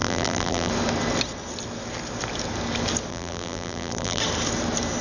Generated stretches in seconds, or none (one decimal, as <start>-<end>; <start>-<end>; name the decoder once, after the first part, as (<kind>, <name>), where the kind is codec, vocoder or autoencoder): 0.0-0.7 (vocoder, BigVGAN v2); 3.1-4.2